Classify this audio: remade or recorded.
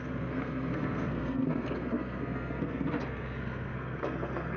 remade